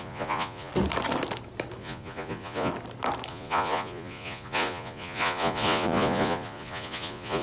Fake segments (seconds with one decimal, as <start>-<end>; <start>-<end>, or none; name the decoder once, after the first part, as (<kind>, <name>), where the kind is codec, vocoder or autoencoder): 0.0-0.7 (vocoder, Vocos); 1.8-2.7; 3.3-7.4

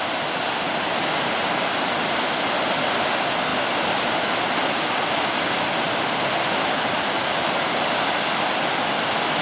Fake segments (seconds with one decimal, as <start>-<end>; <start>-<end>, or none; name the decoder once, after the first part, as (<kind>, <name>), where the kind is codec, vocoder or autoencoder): none

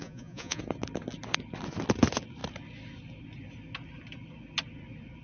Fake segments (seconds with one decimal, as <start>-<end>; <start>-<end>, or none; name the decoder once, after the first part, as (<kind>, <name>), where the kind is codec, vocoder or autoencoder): 0.0-0.6 (vocoder, Vocos)

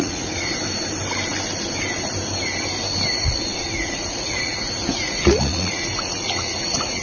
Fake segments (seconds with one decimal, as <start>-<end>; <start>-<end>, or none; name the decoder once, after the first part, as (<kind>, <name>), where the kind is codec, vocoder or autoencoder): 0.0-0.5 (vocoder, Vocos); 3.1-7.0

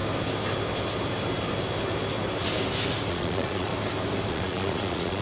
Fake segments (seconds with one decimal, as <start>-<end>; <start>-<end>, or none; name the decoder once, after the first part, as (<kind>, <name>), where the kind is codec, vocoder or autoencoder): 3.1-3.7 (vocoder, Vocos); 4.3-5.2